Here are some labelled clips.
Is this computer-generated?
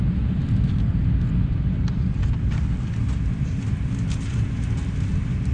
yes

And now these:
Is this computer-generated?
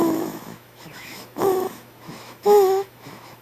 yes